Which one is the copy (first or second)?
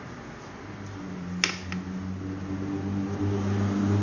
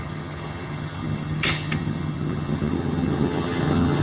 second